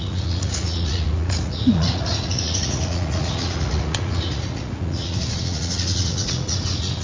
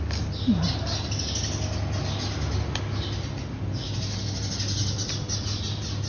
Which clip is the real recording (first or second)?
second